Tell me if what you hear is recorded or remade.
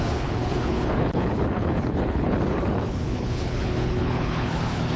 remade